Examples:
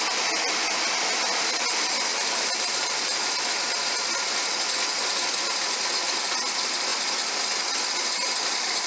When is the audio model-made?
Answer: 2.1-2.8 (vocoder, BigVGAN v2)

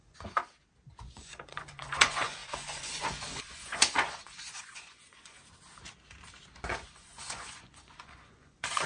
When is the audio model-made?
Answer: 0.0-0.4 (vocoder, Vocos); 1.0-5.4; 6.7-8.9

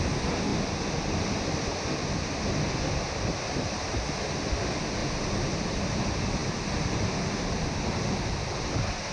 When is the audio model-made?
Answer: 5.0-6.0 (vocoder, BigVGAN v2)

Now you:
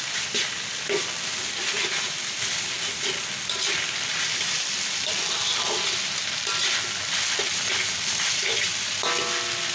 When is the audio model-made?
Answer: none

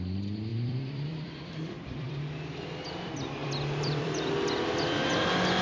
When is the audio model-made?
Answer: 0.5-2.2 (vocoder, BigVGAN v2); 3.4-4.3

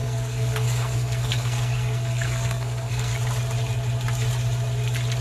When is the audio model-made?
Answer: 0.0-3.1 (codec, SNAC)

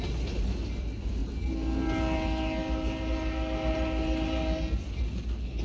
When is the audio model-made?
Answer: none